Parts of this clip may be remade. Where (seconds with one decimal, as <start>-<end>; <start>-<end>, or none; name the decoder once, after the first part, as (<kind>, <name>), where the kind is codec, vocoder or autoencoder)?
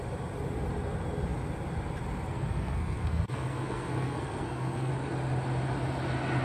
2.3-4.9 (codec, SNAC)